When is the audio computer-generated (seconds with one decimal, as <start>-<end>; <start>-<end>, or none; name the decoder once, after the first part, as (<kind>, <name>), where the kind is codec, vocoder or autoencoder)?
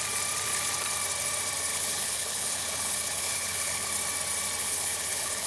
1.7-3.9 (codec, HILCodec); 4.6-5.5